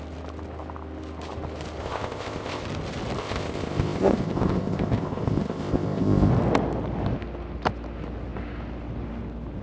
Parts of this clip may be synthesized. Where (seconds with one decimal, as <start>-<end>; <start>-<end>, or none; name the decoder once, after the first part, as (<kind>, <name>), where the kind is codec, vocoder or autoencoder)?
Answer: 1.8-2.6 (codec, ZipCodec); 3.2-6.3